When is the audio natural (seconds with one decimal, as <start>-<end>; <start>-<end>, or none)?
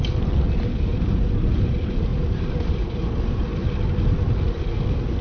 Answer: 0.0-0.9; 1.7-2.1; 3.7-5.2